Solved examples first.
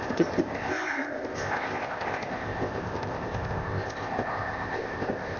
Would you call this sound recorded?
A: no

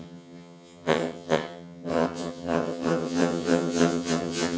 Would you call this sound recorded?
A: no